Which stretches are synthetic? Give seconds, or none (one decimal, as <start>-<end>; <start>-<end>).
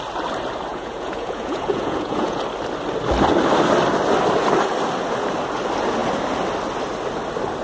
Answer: 0.7-2.4